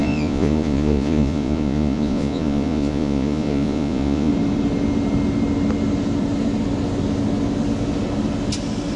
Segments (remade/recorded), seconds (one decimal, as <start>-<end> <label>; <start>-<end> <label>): 0.0-4.3 remade; 4.3-9.0 recorded